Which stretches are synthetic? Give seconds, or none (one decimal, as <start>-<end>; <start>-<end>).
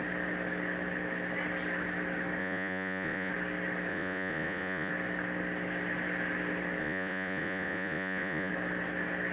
2.4-3.3; 3.9-4.9; 6.8-8.5